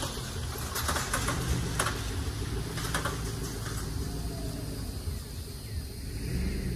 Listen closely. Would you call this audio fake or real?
real